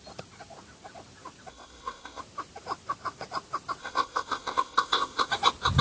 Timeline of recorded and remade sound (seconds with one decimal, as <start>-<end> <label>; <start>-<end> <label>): 0.0-1.5 recorded; 1.5-2.2 remade; 2.2-3.8 recorded; 3.8-5.3 remade; 5.3-5.8 recorded